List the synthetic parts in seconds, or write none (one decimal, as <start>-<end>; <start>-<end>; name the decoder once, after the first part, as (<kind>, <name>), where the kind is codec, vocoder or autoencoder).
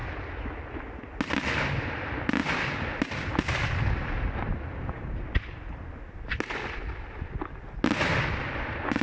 none